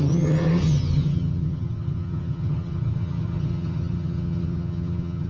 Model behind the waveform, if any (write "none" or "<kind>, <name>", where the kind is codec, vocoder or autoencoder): vocoder, HiFi-GAN